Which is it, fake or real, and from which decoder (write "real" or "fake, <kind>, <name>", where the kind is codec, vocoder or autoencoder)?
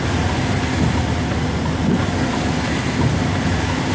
real